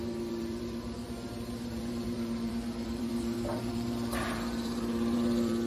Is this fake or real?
fake